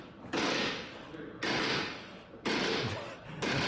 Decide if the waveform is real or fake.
real